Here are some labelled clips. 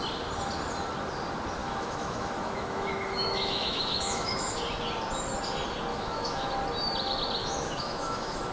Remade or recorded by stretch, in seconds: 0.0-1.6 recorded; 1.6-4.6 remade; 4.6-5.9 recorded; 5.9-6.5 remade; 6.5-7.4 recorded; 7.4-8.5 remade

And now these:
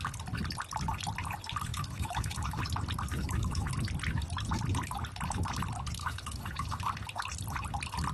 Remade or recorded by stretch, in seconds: 0.0-1.7 recorded; 1.7-2.6 remade; 2.6-3.1 recorded; 3.1-3.7 remade; 3.7-6.0 recorded; 6.0-6.8 remade; 6.8-8.1 recorded

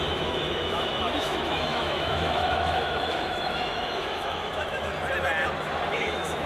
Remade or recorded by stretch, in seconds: 0.0-4.9 remade; 4.9-5.9 recorded; 5.9-6.5 remade